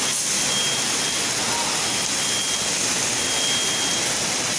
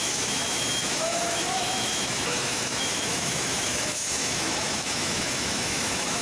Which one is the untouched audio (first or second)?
first